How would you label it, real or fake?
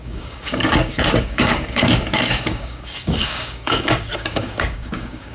fake